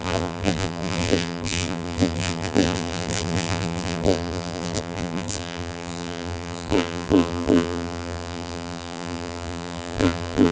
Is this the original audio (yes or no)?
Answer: no